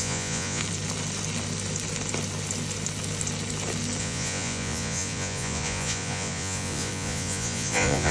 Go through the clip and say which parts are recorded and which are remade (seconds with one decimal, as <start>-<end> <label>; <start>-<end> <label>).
0.0-0.6 remade; 0.6-4.0 recorded; 4.0-8.1 remade